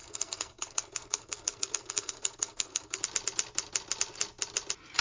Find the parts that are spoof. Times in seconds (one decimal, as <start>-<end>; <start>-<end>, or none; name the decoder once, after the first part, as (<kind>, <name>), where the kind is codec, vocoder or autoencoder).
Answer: 0.0-3.0 (codec, SNAC)